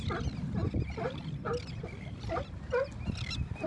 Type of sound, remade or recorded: recorded